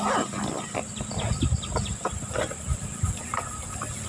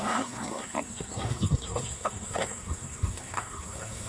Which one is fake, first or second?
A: second